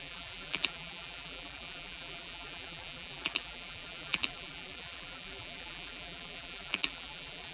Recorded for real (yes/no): no